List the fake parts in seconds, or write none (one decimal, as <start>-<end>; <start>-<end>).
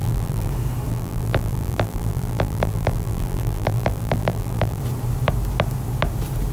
0.0-0.5; 0.9-4.8